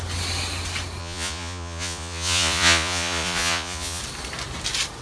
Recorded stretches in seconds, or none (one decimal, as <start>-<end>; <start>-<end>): 0.0-1.0; 4.0-5.0